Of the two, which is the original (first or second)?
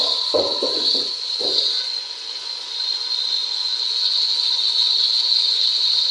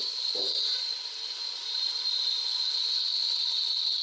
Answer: second